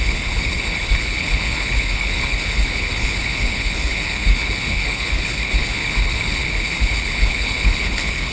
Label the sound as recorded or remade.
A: remade